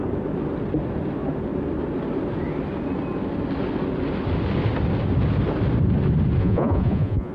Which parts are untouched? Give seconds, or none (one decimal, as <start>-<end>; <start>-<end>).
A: 0.0-6.4